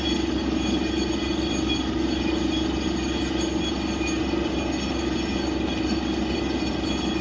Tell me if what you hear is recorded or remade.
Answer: recorded